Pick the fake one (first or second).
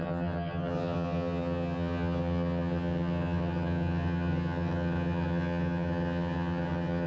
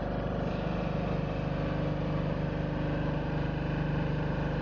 first